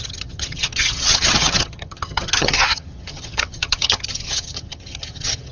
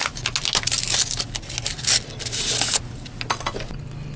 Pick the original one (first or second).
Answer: second